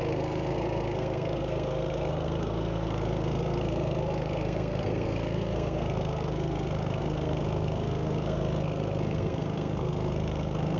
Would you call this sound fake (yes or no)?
yes